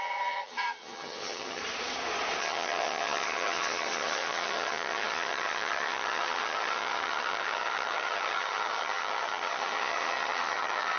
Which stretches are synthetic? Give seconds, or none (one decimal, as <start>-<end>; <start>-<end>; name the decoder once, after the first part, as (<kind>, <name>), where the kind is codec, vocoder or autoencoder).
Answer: 0.0-1.6 (vocoder, HiFi-GAN); 2.4-11.0

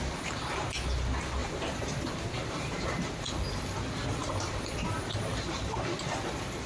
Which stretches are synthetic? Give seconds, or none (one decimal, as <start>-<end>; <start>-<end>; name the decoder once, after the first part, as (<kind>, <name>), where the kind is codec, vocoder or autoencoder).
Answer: 1.4-3.2 (vocoder, BigVGAN v2); 4.2-6.3

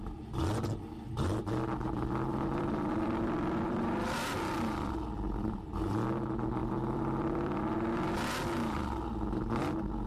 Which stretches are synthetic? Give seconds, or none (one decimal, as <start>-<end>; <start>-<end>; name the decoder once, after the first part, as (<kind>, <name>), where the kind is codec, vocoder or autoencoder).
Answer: 2.3-5.7 (vocoder, BigVGAN v2); 6.6-7.6

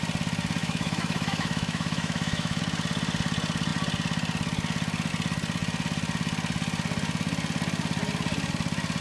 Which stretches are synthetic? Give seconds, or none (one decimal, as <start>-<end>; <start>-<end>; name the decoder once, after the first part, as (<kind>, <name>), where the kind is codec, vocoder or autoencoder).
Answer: 0.6-2.6 (autoencoder, DAC-VAE)

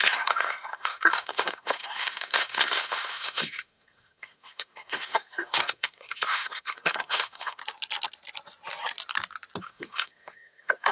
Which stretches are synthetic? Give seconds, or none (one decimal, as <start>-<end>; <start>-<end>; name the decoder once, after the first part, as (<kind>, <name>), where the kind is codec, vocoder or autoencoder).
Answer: 0.0-7.6 (codec, SNAC); 9.6-10.9